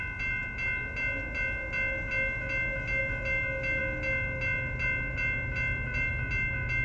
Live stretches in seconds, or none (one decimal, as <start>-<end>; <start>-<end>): 0.0-6.8